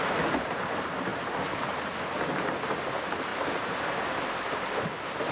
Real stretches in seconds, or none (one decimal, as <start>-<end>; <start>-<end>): 0.0-5.3